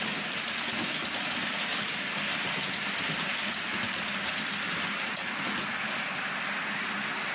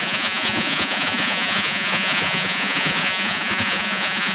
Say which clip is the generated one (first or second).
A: second